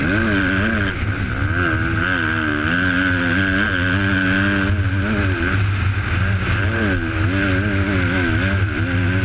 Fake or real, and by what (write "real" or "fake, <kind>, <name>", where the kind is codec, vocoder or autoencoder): real